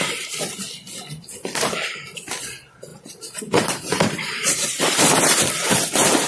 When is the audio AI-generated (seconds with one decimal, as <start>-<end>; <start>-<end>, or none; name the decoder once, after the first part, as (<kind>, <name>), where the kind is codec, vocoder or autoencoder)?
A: 2.9-5.5 (vocoder, BigVGAN v2)